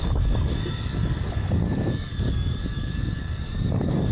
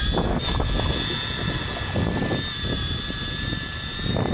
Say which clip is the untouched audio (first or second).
second